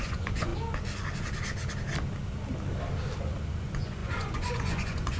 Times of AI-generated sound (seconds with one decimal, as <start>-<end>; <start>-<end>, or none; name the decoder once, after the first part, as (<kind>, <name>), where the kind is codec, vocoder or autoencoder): 0.0-0.5 (vocoder, Vocos); 3.6-5.2